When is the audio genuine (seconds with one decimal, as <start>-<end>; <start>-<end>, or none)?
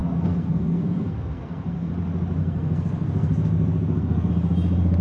1.9-2.4; 4.3-5.0